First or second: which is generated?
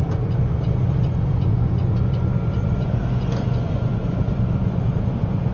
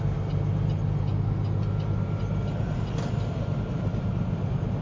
first